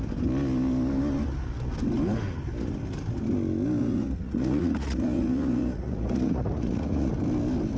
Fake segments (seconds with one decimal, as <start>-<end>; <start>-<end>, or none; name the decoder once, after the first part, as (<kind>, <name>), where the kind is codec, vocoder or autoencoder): 3.8-7.1 (vocoder, Vocos)